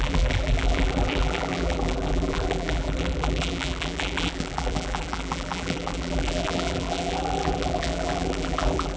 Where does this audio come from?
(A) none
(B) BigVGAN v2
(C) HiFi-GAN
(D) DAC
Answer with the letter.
B